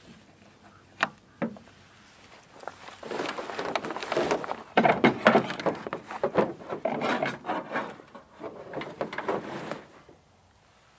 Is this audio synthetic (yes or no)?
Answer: no